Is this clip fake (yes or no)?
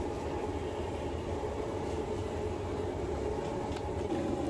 no